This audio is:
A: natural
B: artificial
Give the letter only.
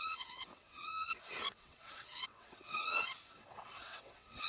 B